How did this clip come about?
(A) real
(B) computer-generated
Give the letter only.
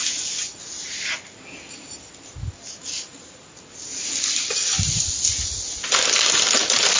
A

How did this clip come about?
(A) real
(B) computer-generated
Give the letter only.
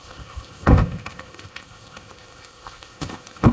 B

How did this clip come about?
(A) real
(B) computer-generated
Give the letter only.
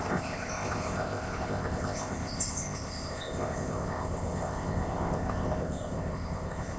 B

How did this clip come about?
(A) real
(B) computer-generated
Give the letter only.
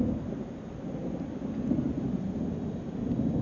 A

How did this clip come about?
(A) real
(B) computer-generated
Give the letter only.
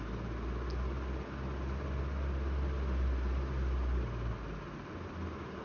A